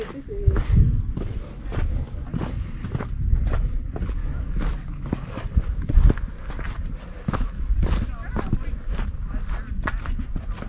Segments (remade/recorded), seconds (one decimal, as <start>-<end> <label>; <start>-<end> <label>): 0.0-4.2 recorded; 4.2-5.5 remade; 5.5-10.7 recorded